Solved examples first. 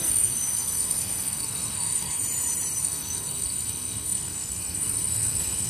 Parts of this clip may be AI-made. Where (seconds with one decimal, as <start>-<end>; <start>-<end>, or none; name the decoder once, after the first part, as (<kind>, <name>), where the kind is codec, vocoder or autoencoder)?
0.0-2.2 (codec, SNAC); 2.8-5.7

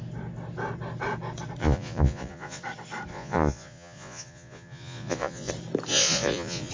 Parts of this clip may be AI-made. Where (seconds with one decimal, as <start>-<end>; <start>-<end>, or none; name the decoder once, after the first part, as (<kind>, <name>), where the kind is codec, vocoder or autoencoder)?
1.6-2.6 (vocoder, Vocos); 3.1-5.5; 5.9-6.7

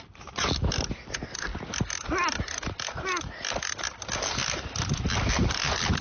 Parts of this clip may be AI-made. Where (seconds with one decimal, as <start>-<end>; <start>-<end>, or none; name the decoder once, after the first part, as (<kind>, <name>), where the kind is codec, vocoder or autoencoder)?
none